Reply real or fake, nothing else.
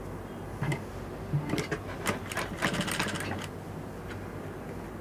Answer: real